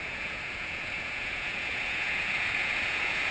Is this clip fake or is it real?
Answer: fake